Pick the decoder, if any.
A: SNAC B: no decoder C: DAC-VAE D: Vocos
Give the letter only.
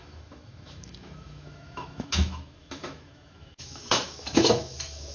C